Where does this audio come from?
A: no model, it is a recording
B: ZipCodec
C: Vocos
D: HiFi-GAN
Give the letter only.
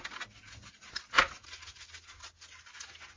A